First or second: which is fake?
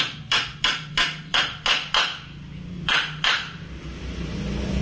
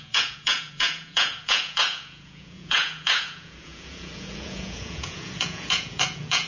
second